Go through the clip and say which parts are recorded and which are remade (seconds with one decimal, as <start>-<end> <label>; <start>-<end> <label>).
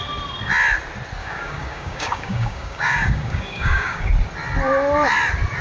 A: 0.0-1.2 recorded; 1.2-4.1 remade; 4.1-5.6 recorded